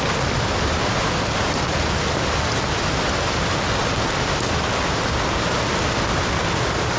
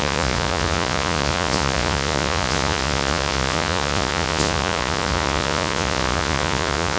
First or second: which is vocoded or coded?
second